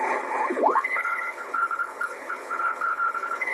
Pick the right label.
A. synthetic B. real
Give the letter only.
A